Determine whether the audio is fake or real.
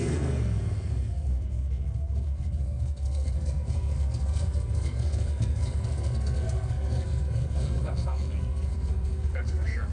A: fake